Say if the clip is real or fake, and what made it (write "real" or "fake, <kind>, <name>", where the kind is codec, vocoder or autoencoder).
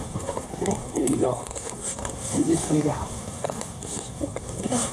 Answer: fake, codec, SNAC